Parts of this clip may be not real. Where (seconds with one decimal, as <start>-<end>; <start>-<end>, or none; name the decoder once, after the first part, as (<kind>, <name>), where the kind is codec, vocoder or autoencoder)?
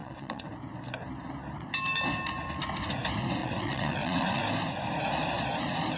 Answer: 0.0-0.5 (vocoder, WaveNeXt); 3.4-4.4